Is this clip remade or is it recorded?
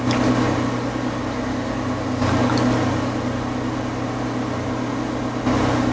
recorded